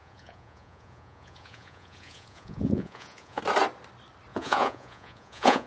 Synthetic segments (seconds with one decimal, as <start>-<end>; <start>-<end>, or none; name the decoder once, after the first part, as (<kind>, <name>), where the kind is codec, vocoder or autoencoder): 0.0-3.4 (vocoder, Vocos); 4.3-5.7